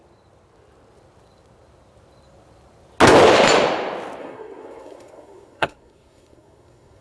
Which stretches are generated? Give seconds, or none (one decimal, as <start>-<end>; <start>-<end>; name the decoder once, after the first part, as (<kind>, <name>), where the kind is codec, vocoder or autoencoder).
4.2-7.0 (codec, SNAC)